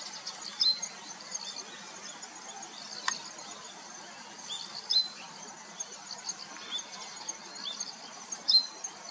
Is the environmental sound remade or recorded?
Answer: recorded